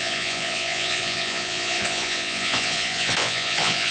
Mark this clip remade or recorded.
remade